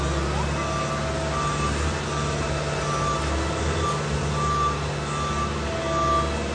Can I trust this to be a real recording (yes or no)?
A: yes